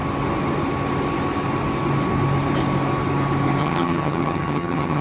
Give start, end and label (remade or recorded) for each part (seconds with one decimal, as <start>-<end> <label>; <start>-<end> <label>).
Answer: 0.0-3.6 recorded; 3.6-5.0 remade